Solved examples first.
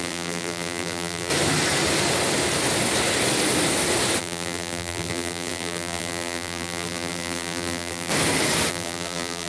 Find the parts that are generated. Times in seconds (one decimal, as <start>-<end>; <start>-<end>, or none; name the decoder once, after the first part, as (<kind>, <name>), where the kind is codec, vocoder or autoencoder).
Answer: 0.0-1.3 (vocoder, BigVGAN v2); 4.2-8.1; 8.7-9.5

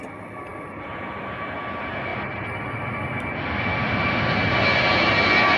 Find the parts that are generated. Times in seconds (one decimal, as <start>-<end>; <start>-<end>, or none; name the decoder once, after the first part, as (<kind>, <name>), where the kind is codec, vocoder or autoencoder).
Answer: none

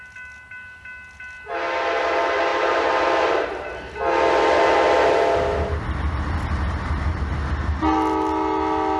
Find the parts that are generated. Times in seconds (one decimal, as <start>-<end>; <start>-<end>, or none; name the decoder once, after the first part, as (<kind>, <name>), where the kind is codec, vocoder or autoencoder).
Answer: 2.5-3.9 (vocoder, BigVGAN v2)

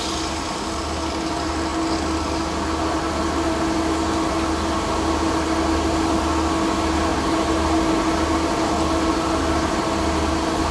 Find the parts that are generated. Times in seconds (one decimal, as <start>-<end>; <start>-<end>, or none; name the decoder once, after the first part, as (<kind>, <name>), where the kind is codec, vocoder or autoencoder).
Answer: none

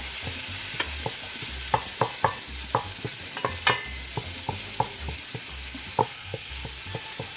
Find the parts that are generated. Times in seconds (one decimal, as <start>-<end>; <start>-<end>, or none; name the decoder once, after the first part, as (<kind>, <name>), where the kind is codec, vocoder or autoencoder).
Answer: 6.0-6.5 (codec, SNAC)